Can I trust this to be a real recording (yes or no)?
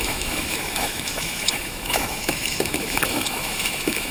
no